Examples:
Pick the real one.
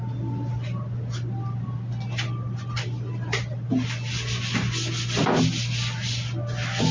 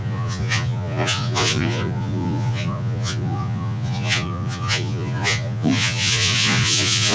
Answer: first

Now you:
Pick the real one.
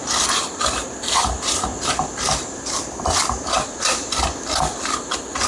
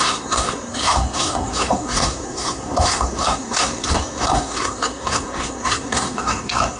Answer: first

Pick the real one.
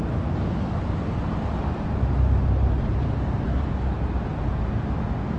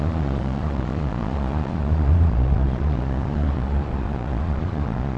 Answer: first